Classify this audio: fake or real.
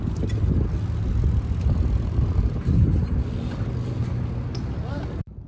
real